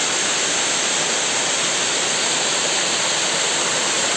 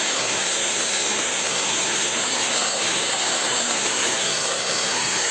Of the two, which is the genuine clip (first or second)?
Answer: first